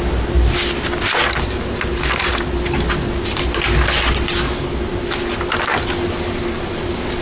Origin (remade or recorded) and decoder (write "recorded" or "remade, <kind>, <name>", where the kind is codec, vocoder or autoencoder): recorded